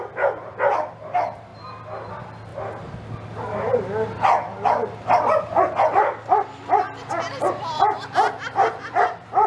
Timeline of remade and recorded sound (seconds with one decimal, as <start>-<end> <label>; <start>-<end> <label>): 0.0-1.5 remade; 1.5-2.1 recorded; 2.1-2.5 remade; 2.5-7.3 recorded; 7.3-9.5 remade